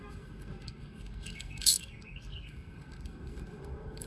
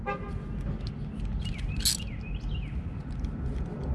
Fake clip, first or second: first